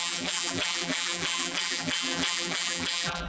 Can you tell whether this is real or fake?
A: fake